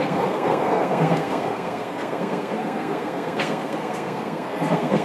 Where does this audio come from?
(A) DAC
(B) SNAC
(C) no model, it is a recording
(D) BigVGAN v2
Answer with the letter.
B